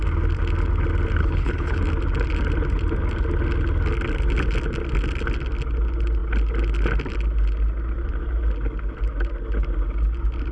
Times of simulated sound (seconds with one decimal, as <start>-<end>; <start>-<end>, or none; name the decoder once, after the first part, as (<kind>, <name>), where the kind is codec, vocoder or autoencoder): 1.2-1.8 (codec, HILCodec)

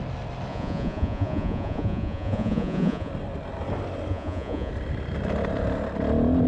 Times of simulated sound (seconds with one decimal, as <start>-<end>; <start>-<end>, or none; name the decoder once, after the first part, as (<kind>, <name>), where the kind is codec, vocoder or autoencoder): 0.5-3.1 (vocoder, Vocos); 4.1-4.7